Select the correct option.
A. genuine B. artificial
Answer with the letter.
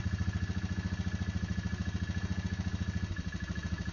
A